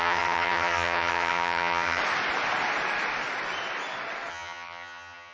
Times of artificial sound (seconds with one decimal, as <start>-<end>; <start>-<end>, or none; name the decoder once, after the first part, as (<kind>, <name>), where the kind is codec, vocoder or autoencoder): 0.0-2.0 (vocoder, HiFi-GAN); 4.3-5.3